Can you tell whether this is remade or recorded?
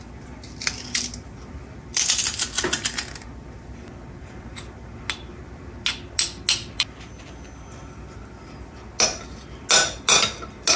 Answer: recorded